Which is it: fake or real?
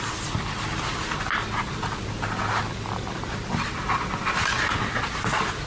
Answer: real